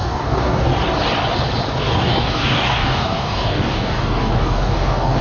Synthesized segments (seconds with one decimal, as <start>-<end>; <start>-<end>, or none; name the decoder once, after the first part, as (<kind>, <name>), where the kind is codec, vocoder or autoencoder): 0.0-0.7 (codec, DAC); 1.8-5.2